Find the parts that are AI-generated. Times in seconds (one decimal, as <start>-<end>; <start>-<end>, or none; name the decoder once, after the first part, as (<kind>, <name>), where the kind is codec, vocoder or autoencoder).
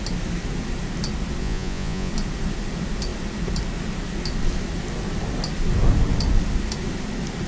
1.4-2.1 (vocoder, Vocos)